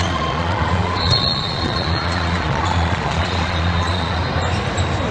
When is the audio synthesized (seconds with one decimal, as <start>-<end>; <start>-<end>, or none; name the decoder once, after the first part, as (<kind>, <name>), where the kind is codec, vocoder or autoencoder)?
0.0-4.2 (vocoder, Vocos)